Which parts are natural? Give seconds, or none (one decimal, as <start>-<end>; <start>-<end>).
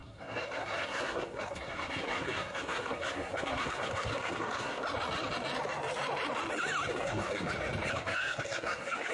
4.8-6.9; 7.5-7.9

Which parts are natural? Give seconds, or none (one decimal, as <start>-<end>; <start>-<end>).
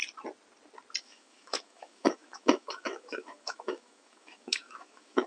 0.0-1.0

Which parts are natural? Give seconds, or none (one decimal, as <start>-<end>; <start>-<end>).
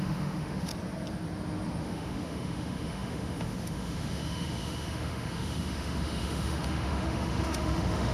0.7-1.8